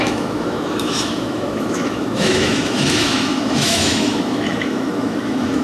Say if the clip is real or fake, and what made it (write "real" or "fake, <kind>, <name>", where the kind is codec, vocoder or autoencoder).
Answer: fake, autoencoder, DAC-VAE